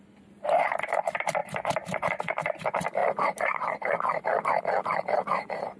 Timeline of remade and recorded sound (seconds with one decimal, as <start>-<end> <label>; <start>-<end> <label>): 0.0-1.4 recorded; 1.4-2.2 remade; 2.2-3.0 recorded; 3.0-5.8 remade